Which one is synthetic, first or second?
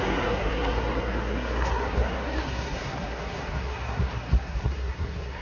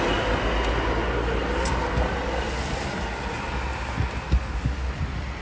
first